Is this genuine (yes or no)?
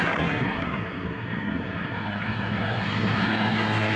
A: no